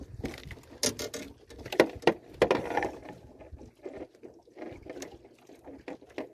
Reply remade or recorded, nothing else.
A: recorded